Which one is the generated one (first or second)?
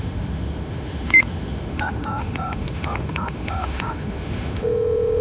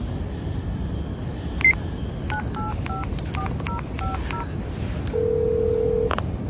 first